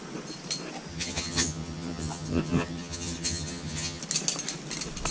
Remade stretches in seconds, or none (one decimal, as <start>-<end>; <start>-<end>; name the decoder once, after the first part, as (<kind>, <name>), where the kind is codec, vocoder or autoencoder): 0.9-4.0 (vocoder, HiFi-GAN)